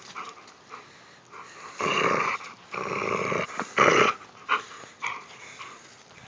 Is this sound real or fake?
real